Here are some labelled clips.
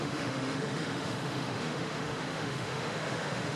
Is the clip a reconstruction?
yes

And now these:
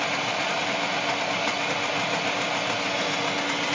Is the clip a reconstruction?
no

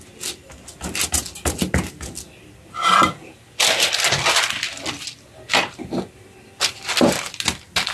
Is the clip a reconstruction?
no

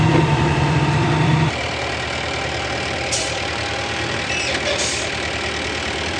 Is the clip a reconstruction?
yes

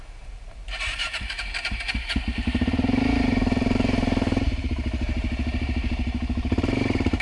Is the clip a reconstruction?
yes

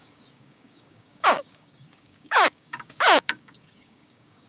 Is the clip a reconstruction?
yes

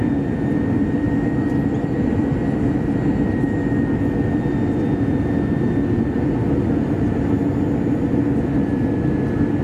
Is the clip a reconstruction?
no